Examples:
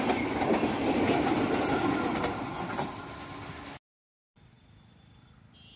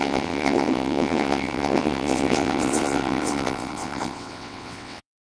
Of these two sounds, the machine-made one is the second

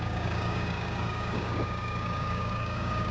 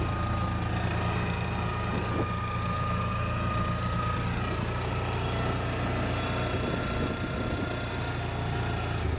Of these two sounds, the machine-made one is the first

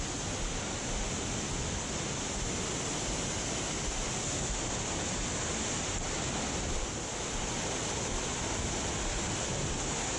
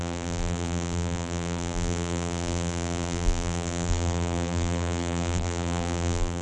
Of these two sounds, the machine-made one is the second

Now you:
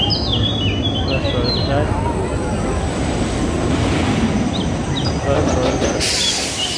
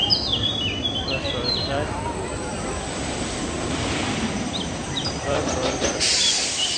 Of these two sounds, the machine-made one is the second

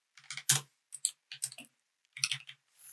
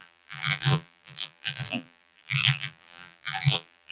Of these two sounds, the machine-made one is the second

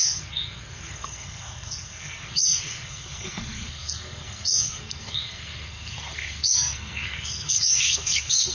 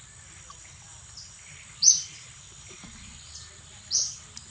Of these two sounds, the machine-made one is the first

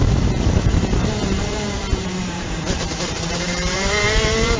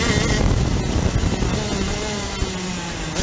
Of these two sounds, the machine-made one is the first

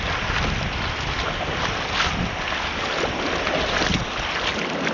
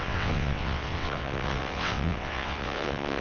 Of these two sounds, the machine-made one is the second